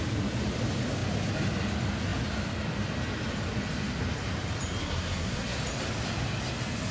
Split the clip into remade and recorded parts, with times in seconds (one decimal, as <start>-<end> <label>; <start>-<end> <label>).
0.0-4.8 recorded; 4.8-5.6 remade; 5.6-6.9 recorded